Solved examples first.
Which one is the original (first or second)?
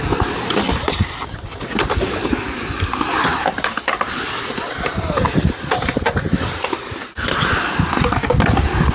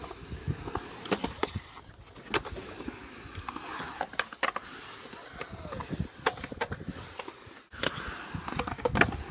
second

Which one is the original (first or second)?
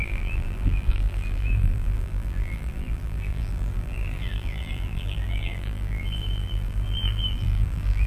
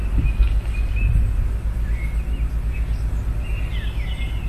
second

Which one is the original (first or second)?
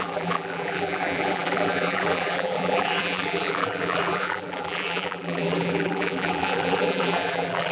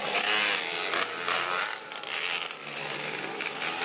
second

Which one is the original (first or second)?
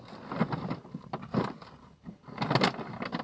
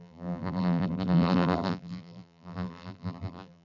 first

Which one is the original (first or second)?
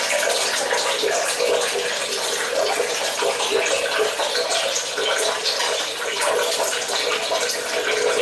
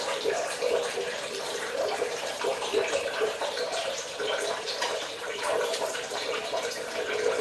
first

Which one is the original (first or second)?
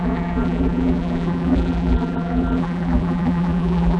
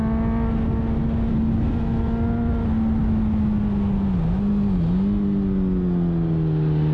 second